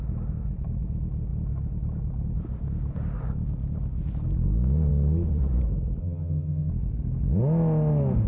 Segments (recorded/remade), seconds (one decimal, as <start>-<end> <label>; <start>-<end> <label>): 0.0-6.0 recorded; 6.0-6.7 remade; 6.7-8.3 recorded